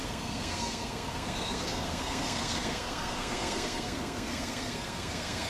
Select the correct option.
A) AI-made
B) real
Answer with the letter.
A